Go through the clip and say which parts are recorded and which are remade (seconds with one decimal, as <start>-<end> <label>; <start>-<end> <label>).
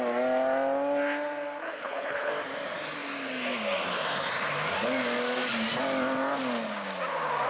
0.0-1.6 recorded; 1.6-2.3 remade; 2.3-7.5 recorded